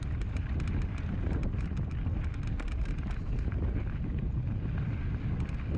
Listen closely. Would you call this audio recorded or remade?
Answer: recorded